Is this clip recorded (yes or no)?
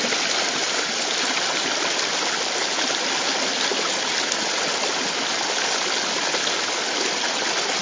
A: yes